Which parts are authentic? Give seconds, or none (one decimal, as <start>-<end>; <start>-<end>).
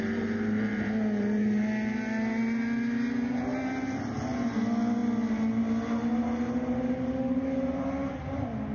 0.0-8.7